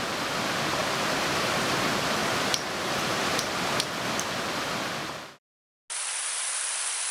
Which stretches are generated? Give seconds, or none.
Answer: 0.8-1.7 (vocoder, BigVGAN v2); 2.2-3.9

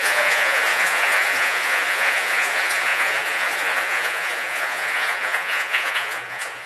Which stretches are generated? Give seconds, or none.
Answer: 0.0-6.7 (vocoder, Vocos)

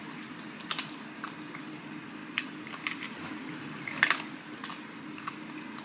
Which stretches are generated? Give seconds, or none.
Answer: none

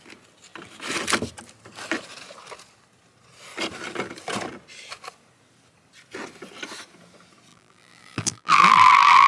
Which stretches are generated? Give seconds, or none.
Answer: 7.5-9.3 (vocoder, BigVGAN v2)

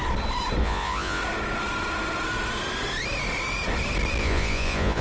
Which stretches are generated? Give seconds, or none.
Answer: 0.6-1.2 (vocoder, Vocos); 4.2-5.0

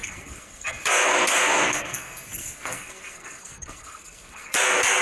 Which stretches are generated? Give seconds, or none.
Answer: 0.0-5.0 (codec, SNAC)